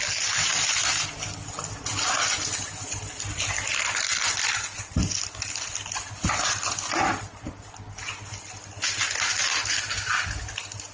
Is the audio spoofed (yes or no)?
no